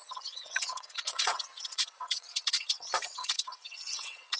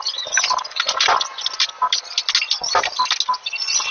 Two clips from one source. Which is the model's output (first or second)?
first